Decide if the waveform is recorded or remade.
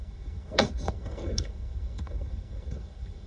remade